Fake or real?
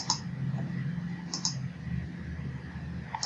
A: real